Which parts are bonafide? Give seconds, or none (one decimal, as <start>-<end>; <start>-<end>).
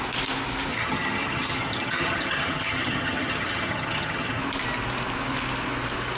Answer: 0.0-0.7; 4.4-6.2